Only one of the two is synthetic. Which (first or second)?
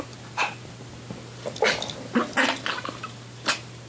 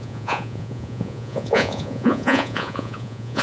second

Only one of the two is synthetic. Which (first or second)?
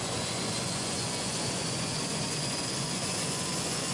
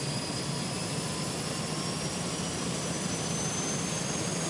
first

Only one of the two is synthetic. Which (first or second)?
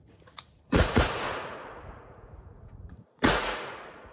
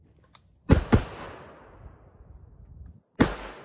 first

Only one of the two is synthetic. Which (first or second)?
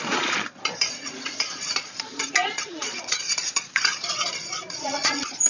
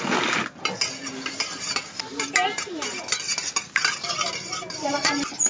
first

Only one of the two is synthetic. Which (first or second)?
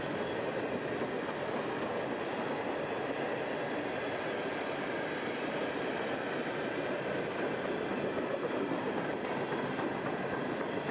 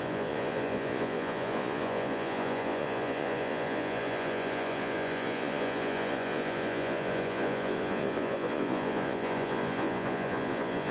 second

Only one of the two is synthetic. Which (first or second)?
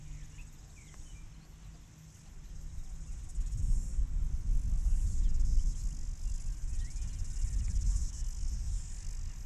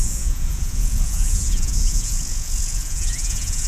second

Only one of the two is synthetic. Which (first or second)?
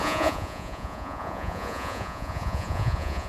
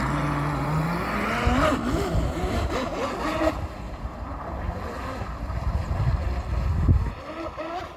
first